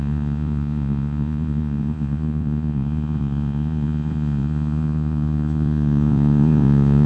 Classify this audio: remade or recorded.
remade